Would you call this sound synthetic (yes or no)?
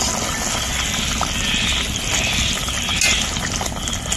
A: no